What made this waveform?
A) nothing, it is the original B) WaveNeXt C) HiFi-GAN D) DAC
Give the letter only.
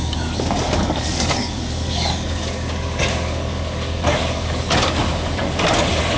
D